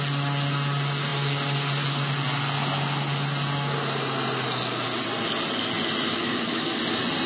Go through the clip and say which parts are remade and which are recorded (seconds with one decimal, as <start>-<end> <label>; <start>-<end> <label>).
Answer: 0.0-6.2 recorded; 6.2-6.8 remade; 6.8-7.3 recorded